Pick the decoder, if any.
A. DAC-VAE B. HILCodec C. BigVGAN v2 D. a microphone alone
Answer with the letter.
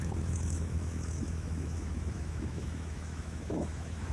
A